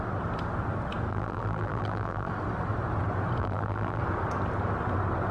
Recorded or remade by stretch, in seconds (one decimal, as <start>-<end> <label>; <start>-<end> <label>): 0.0-1.1 recorded; 1.1-2.3 remade; 2.3-3.4 recorded; 3.4-4.0 remade; 4.0-5.3 recorded